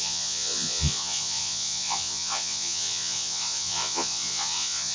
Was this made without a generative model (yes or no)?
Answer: no